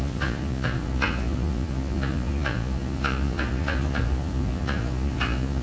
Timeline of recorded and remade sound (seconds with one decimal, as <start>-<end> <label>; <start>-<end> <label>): 0.0-5.6 remade